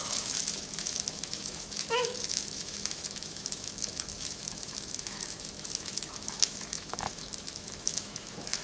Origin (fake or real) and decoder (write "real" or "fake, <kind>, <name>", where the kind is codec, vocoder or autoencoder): fake, autoencoder, DAC-VAE